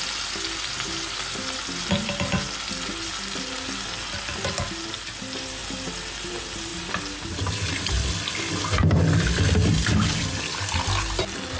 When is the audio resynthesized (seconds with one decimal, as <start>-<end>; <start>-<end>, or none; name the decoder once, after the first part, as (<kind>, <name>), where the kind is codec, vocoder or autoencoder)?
none